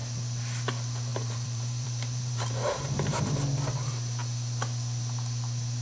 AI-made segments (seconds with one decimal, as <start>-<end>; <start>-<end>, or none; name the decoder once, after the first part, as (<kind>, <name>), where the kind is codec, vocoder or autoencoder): 1.1-3.2 (vocoder, BigVGAN v2)